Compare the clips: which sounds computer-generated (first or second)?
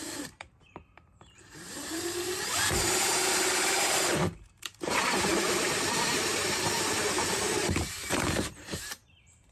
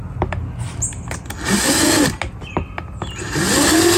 first